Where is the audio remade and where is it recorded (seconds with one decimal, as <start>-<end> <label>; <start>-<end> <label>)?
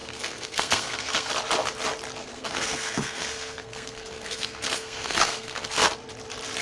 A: 0.0-1.3 remade; 1.3-2.2 recorded; 2.2-5.9 remade; 5.9-6.6 recorded